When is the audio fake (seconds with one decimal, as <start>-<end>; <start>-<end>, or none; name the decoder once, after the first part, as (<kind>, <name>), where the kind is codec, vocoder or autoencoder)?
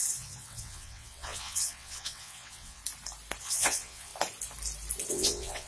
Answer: 0.0-2.8 (vocoder, WaveNeXt); 3.4-4.1; 5.1-5.7